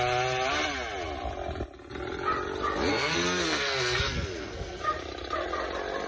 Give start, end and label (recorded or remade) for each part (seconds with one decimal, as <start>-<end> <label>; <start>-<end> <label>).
0.0-2.9 recorded; 2.9-4.8 remade; 4.8-6.1 recorded